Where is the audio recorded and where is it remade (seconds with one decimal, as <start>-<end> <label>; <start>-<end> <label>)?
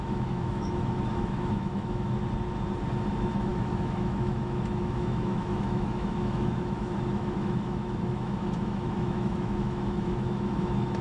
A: 0.0-2.2 remade; 2.2-3.1 recorded; 3.1-11.0 remade